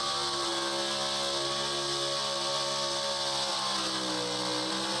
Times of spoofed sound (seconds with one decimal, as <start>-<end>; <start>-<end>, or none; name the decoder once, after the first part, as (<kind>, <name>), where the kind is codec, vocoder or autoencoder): none